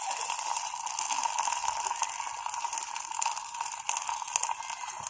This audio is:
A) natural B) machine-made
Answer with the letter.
A